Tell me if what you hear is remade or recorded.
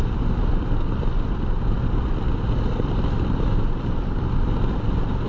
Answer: remade